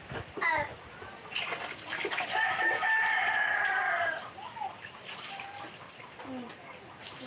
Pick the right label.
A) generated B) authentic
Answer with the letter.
B